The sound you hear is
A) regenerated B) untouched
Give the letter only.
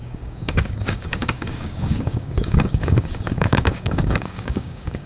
A